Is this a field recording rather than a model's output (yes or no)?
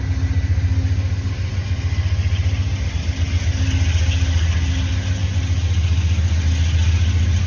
yes